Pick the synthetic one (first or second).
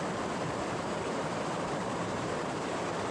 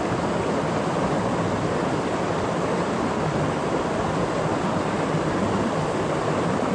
first